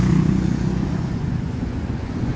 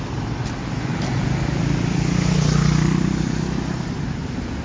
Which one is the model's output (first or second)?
first